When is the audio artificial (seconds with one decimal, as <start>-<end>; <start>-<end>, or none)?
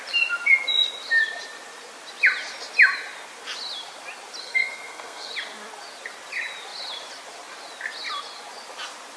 4.4-5.3